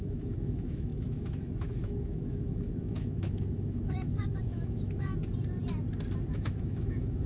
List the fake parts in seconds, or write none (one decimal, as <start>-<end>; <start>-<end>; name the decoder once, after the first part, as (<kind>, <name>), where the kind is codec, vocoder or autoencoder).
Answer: 0.0-5.1 (autoencoder, DAC-VAE); 6.3-7.3